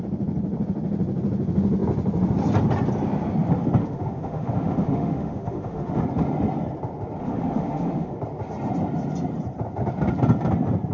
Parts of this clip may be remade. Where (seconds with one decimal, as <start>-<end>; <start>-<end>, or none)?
3.8-6.0; 7.2-8.1